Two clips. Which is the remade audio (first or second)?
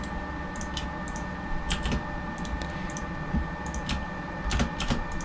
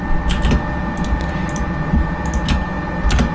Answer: first